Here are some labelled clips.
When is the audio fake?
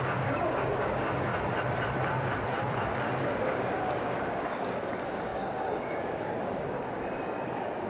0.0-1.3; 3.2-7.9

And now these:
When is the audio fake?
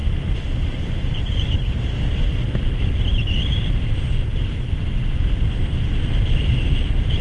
0.0-2.0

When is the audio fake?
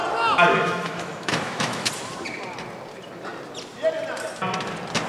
0.5-1.9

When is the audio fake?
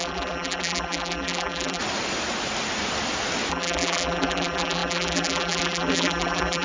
0.0-1.8; 3.5-6.6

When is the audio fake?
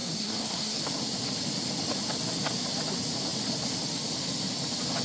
0.0-0.8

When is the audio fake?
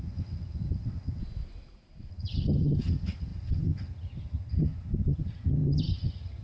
0.0-1.2; 2.1-6.4